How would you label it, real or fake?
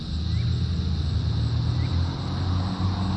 real